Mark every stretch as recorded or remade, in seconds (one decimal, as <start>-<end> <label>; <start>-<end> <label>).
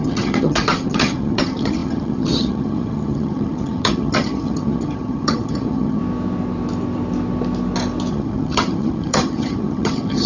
0.0-6.0 remade; 6.0-8.1 recorded; 8.1-10.3 remade